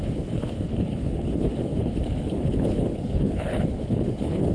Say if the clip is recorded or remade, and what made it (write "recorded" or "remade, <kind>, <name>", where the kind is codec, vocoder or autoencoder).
remade, codec, HILCodec